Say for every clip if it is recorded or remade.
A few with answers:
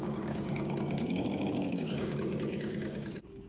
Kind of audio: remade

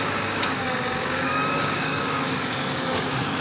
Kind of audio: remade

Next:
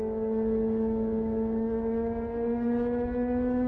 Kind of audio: remade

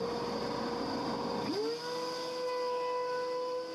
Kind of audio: recorded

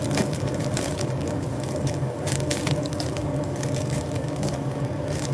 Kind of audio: remade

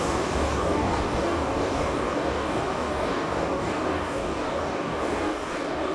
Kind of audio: remade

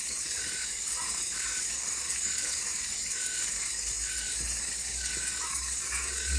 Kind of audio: remade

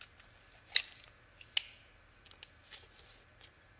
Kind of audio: recorded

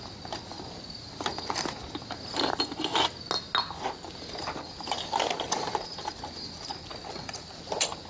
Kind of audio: recorded